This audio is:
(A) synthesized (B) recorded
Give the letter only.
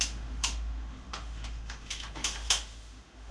A